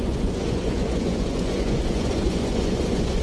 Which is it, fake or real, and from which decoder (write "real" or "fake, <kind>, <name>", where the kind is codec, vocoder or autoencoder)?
fake, vocoder, Vocos